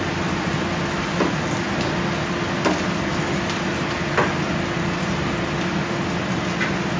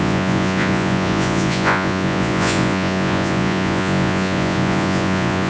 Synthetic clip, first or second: second